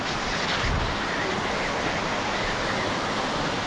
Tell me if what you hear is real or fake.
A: real